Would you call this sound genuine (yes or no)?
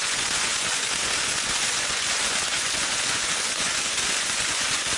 no